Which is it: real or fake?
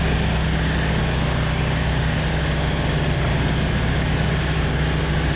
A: real